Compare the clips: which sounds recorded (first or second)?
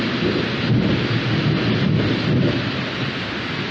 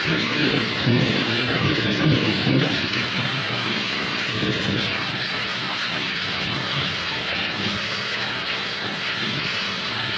first